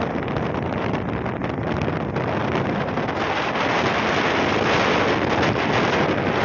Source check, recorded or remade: recorded